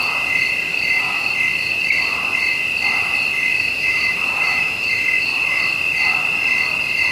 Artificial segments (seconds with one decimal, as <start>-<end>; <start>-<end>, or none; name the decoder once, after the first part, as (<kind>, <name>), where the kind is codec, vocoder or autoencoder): 0.7-1.3 (autoencoder, DAC-VAE); 3.5-5.6